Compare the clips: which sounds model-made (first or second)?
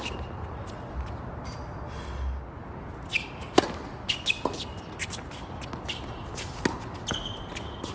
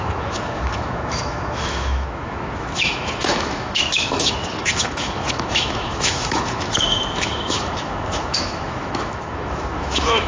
second